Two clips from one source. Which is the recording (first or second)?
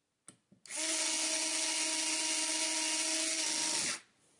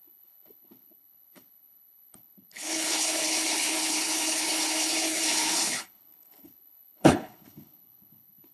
first